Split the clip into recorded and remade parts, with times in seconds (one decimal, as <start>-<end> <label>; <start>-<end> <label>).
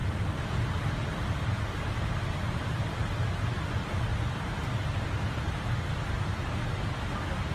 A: 0.0-3.0 remade; 3.0-4.1 recorded; 4.1-5.0 remade; 5.0-7.5 recorded